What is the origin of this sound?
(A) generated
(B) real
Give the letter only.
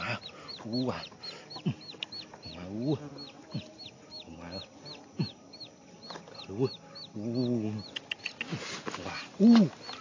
B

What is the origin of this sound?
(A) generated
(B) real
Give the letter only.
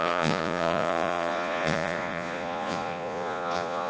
A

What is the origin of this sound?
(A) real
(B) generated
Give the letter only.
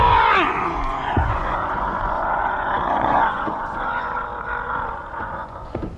B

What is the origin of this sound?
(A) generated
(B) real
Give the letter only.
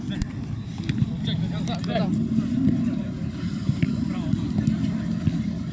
B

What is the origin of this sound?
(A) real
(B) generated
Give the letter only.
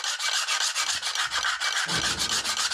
A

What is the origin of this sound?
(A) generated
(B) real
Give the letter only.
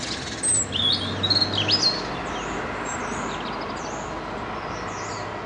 B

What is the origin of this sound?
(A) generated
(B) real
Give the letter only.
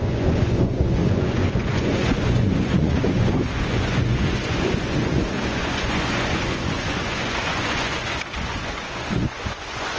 A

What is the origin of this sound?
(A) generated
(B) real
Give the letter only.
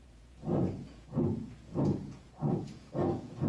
A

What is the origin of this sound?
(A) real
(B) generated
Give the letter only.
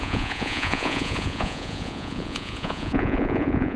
B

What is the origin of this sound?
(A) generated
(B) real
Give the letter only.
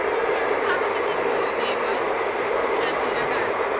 B